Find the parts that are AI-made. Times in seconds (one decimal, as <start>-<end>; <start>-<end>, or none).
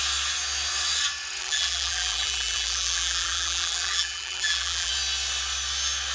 1.4-4.9